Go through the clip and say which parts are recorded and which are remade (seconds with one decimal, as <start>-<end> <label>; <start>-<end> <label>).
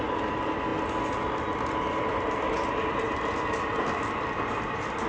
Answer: 0.0-5.1 recorded